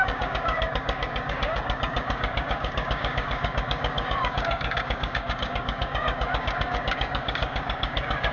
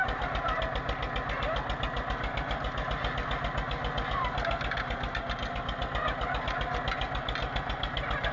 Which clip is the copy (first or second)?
first